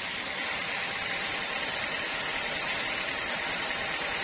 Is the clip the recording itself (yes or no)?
no